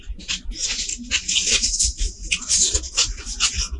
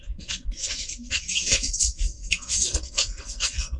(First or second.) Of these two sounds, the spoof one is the second